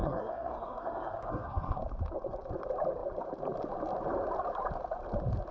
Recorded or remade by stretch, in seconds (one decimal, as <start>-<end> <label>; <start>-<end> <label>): 0.0-1.8 remade; 1.8-5.5 recorded